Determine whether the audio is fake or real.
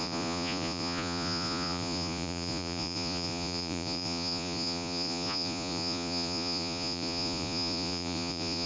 fake